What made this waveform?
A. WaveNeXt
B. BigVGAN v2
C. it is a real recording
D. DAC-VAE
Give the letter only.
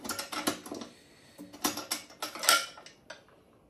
C